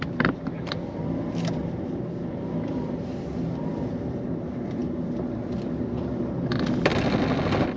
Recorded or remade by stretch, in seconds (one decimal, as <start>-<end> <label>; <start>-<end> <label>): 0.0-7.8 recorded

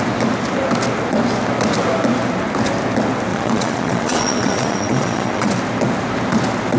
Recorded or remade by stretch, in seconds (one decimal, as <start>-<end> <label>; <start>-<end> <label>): 0.0-3.3 recorded; 3.3-5.5 remade; 5.5-6.8 recorded

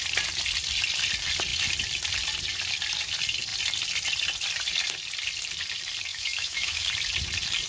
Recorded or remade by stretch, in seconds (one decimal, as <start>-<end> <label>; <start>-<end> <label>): 0.0-6.1 recorded; 6.1-6.9 remade; 6.9-7.7 recorded

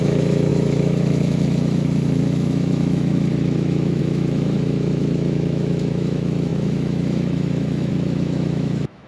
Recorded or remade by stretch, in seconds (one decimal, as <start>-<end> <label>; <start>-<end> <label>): 0.0-9.1 remade